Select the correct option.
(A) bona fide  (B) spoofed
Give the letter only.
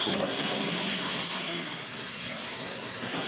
B